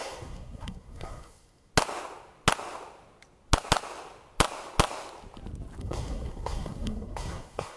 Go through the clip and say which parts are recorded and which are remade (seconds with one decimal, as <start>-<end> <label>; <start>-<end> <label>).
0.0-1.7 remade; 1.7-5.8 recorded; 5.8-7.8 remade

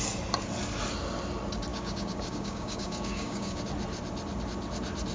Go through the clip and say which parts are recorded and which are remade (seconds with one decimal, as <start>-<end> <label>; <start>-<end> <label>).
0.0-1.7 recorded; 1.7-3.6 remade; 3.6-5.1 recorded

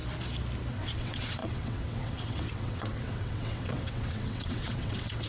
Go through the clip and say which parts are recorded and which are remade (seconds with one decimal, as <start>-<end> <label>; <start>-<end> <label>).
0.0-0.7 recorded; 0.7-5.3 remade

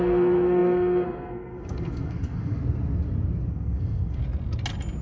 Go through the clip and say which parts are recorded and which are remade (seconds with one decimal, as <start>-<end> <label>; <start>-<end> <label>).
0.0-2.6 remade; 2.6-3.5 recorded; 3.5-4.2 remade; 4.2-5.0 recorded